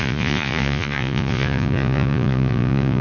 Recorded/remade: remade